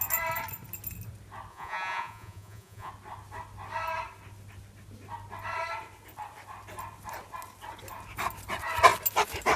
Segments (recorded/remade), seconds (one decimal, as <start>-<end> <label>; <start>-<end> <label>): 0.0-1.5 recorded; 1.5-2.9 remade; 2.9-9.6 recorded